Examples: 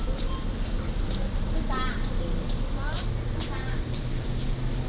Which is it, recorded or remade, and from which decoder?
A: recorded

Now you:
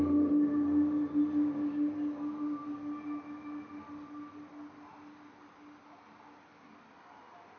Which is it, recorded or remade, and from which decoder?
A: recorded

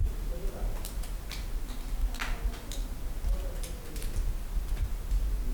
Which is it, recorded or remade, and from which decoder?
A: recorded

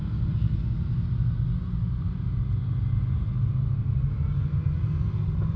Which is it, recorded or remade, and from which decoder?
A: recorded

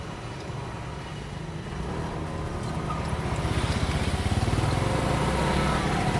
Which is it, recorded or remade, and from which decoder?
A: recorded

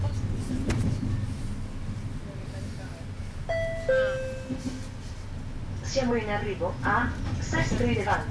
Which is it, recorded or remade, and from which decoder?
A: recorded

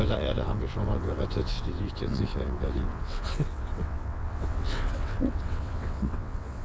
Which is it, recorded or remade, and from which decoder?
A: remade, vocoder, WaveNeXt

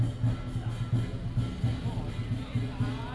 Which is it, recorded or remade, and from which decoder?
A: recorded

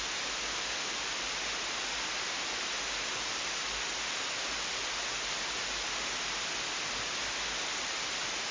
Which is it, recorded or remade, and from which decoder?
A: recorded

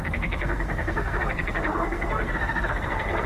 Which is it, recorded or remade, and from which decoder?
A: remade, codec, SNAC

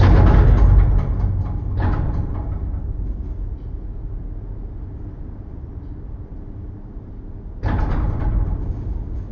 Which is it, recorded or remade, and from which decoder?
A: recorded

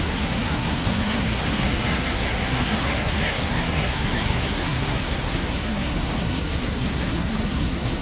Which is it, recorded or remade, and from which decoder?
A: remade, codec, SNAC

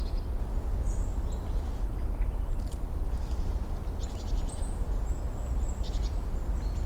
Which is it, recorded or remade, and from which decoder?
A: recorded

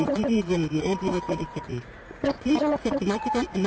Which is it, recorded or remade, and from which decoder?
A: remade, vocoder, Vocos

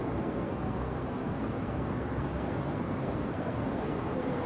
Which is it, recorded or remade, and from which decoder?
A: remade, codec, SNAC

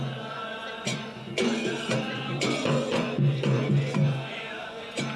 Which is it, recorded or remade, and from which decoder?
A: remade, vocoder, Vocos